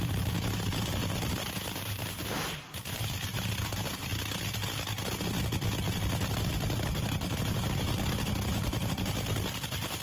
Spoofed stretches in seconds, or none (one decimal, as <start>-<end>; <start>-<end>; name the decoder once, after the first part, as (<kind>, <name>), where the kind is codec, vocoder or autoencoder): 0.0-4.1 (vocoder, BigVGAN v2); 7.4-10.0